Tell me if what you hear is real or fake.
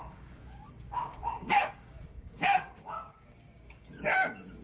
fake